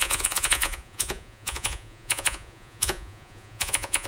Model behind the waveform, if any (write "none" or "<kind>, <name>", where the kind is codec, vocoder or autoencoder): vocoder, Vocos